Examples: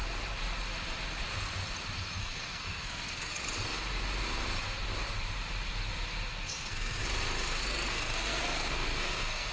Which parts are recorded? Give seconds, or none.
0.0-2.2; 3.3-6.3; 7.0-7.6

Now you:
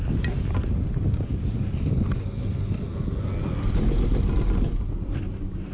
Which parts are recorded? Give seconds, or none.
0.0-5.7